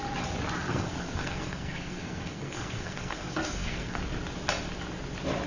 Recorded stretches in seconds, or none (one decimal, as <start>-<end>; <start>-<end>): 0.0-0.7; 4.0-5.5